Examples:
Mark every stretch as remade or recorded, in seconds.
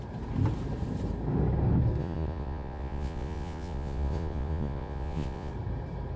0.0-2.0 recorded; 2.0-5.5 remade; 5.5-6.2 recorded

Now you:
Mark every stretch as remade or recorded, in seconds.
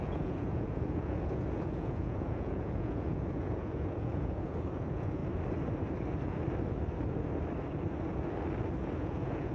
0.0-5.2 remade; 5.2-9.0 recorded; 9.0-9.5 remade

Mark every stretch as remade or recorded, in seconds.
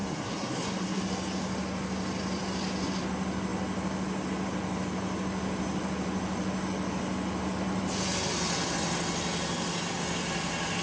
0.0-1.0 remade; 1.0-10.8 recorded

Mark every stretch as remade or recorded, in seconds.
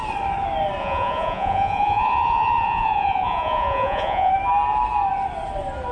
0.0-0.8 recorded; 0.8-4.3 remade; 4.3-5.9 recorded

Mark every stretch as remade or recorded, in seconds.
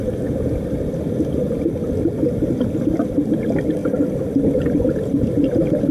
0.0-5.9 recorded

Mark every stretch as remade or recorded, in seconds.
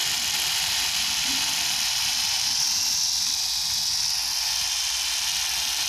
0.0-5.9 recorded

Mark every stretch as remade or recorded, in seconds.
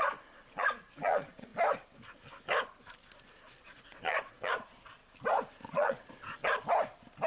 0.0-1.5 remade; 1.5-3.6 recorded; 3.6-5.0 remade; 5.0-5.7 recorded; 5.7-6.4 remade; 6.4-7.3 recorded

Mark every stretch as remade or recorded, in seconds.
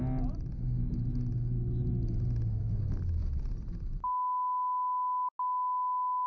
0.0-6.3 recorded